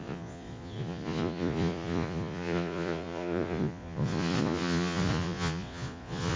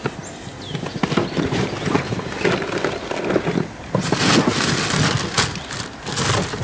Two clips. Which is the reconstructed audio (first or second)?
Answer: first